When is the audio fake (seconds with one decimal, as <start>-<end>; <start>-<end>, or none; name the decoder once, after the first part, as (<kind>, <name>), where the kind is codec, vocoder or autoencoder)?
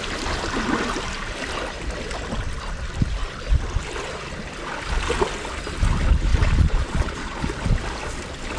6.3-7.4 (vocoder, Vocos)